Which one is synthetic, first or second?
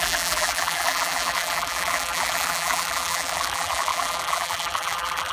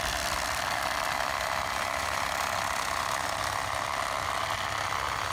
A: first